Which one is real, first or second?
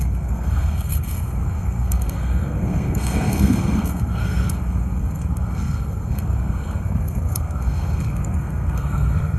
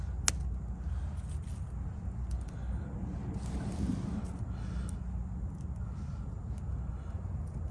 second